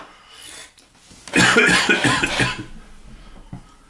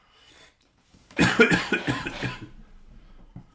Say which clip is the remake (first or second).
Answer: second